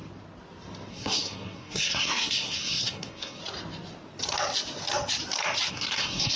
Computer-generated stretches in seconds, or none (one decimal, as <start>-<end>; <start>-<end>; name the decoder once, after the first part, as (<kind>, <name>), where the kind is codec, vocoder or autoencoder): 0.9-3.4 (codec, SNAC); 5.7-6.4